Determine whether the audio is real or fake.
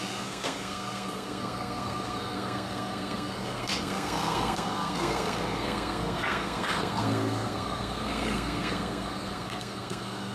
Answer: fake